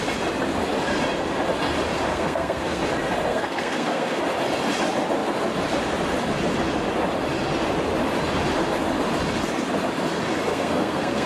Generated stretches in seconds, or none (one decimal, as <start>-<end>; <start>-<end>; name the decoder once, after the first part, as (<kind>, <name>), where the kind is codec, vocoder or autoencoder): 2.1-2.8 (codec, SNAC); 3.3-4.2; 10.5-11.3